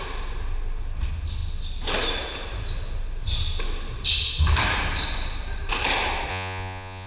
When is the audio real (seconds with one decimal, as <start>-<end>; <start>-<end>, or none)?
0.0-6.3